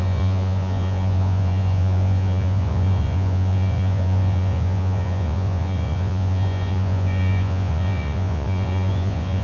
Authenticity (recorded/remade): remade